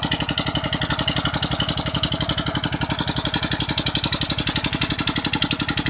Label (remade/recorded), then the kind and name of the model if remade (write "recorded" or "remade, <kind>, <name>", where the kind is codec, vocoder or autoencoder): recorded